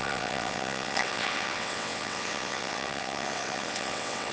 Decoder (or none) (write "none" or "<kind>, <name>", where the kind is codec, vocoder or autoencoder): vocoder, WaveNeXt